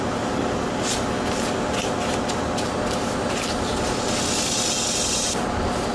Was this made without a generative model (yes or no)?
yes